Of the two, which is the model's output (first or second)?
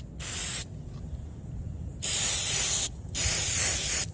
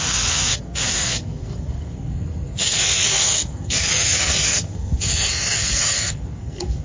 second